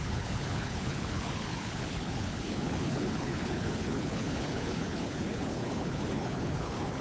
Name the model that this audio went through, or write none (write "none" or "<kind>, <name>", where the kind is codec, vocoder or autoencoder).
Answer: codec, HILCodec